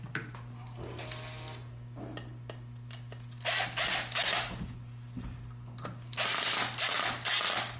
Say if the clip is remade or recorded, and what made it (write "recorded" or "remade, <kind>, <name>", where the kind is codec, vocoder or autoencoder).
recorded